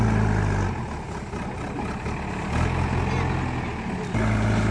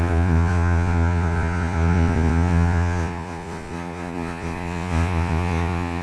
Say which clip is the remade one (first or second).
second